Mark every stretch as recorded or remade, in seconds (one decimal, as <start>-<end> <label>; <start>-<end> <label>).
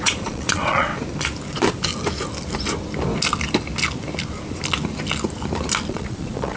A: 0.0-0.9 remade; 0.9-1.5 recorded; 1.5-1.9 remade; 1.9-5.9 recorded; 5.9-6.6 remade